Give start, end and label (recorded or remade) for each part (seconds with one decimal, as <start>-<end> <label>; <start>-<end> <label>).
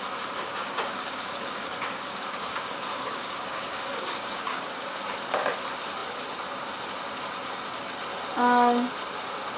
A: 0.0-0.6 recorded; 0.6-5.5 remade; 5.5-9.6 recorded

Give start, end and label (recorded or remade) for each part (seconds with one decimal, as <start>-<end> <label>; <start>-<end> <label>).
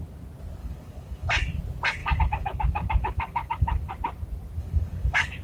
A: 0.0-0.6 recorded; 0.6-1.6 remade; 1.6-2.0 recorded; 2.0-3.9 remade; 3.9-4.6 recorded; 4.6-5.4 remade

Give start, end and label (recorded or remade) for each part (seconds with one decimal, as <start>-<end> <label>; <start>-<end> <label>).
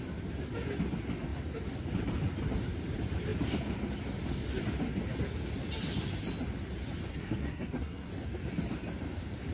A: 0.0-7.1 recorded; 7.1-8.1 remade; 8.1-9.5 recorded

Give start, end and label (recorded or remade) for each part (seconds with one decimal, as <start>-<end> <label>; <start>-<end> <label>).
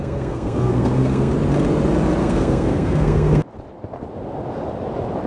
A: 0.0-1.3 remade; 1.3-2.2 recorded; 2.2-3.4 remade; 3.4-5.3 recorded